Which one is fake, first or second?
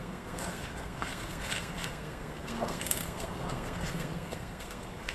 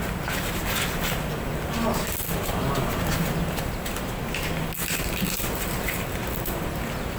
first